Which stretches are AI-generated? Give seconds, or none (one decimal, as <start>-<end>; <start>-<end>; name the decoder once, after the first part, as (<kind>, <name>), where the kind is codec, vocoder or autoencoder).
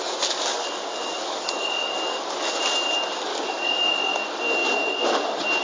0.5-2.2 (codec, DAC); 3.3-3.9